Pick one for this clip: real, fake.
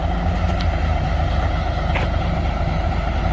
real